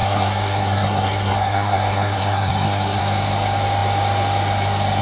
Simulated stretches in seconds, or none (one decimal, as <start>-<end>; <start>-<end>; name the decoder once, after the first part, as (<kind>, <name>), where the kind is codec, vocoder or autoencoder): 0.0-3.0 (codec, SNAC)